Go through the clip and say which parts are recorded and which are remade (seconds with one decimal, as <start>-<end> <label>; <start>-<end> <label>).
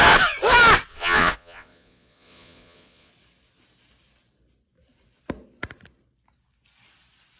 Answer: 0.0-0.9 recorded; 0.9-3.1 remade; 3.1-7.4 recorded